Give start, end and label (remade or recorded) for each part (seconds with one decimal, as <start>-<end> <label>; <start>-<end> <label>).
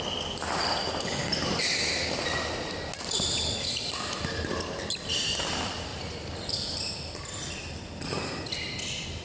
0.0-5.9 recorded; 5.9-7.5 remade; 7.5-9.2 recorded